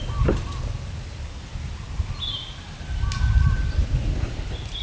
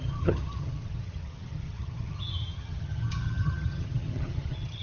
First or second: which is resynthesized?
second